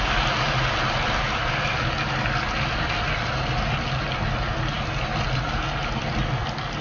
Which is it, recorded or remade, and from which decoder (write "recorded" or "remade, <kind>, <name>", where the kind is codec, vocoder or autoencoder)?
recorded